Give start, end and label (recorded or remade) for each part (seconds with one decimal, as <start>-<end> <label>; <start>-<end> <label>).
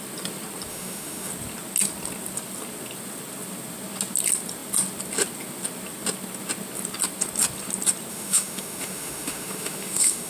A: 0.0-0.7 recorded; 0.7-1.3 remade; 1.3-8.1 recorded; 8.1-10.3 remade